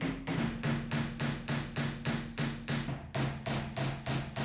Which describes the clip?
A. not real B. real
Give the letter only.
B